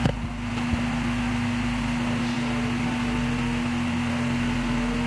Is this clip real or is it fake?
real